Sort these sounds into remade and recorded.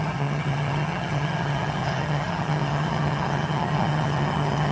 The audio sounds remade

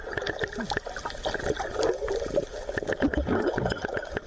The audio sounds recorded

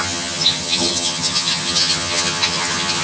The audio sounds remade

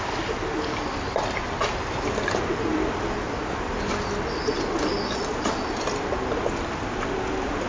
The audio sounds recorded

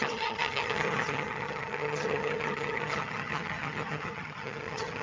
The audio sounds remade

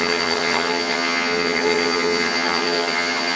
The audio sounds remade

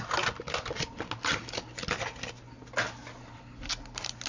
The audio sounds recorded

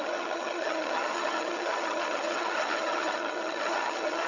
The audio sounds remade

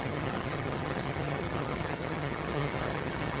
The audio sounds remade